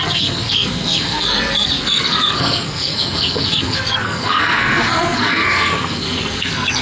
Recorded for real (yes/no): no